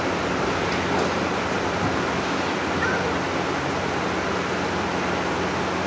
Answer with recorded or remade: recorded